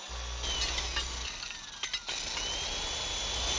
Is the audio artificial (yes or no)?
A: no